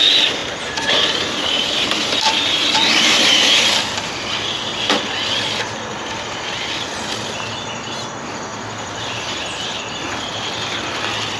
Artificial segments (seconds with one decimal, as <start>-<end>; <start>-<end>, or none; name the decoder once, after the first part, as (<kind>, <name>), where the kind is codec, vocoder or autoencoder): 0.4-3.8 (vocoder, BigVGAN v2); 8.5-9.9